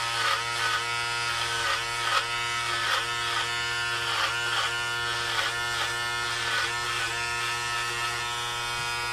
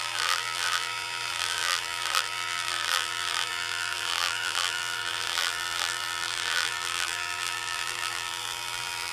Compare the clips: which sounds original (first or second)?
first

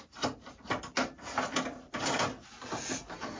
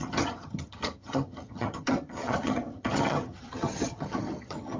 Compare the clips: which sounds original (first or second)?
first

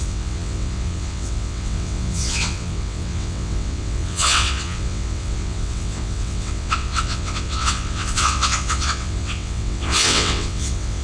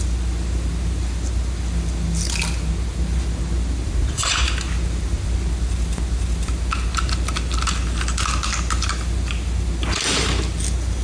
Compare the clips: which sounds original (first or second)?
second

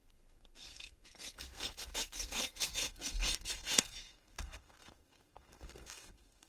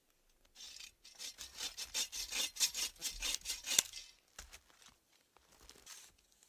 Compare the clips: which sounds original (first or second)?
second